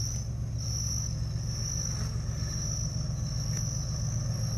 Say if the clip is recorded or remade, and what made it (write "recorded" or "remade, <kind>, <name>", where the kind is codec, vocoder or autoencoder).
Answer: recorded